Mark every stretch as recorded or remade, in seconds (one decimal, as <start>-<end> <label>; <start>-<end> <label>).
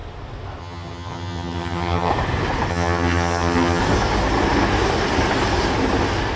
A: 0.0-0.6 recorded; 0.6-2.1 remade; 2.1-2.7 recorded; 2.7-3.8 remade; 3.8-6.4 recorded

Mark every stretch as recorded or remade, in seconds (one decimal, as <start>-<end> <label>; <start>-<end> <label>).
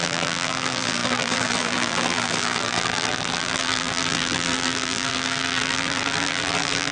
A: 0.0-6.9 remade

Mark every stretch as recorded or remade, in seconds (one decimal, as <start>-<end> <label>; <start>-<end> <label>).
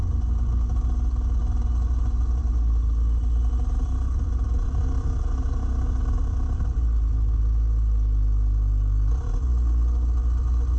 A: 0.0-10.8 recorded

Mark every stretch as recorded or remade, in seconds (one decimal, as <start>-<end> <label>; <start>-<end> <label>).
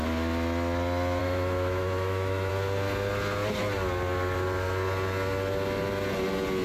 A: 0.0-1.2 recorded; 1.2-2.5 remade; 2.5-6.6 recorded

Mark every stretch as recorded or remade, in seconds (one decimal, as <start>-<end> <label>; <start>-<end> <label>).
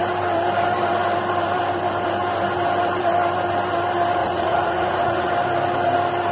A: 0.0-4.2 recorded; 4.2-5.3 remade; 5.3-6.3 recorded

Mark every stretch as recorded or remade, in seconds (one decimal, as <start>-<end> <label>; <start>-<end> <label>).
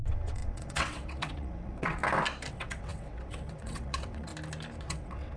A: 0.0-2.0 remade; 2.0-2.5 recorded; 2.5-4.3 remade; 4.3-4.8 recorded; 4.8-5.4 remade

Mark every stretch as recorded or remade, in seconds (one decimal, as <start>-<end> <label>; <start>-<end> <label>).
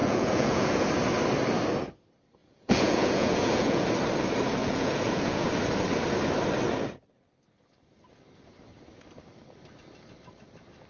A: 0.0-0.9 remade; 0.9-2.4 recorded; 2.4-3.8 remade; 3.8-4.6 recorded; 4.6-5.5 remade; 5.5-10.9 recorded